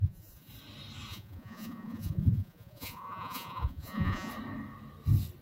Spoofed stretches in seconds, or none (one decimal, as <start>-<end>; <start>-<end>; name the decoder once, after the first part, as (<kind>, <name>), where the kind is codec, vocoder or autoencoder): 0.0-0.5 (vocoder, Vocos); 1.1-4.3